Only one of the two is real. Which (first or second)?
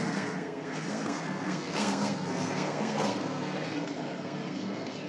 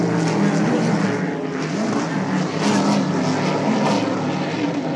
second